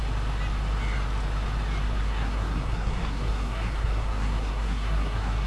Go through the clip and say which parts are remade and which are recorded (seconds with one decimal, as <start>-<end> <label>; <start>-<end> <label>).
0.0-2.0 recorded; 2.0-5.5 remade